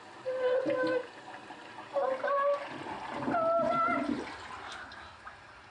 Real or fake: real